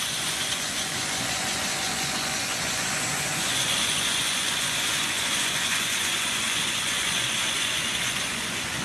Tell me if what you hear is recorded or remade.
remade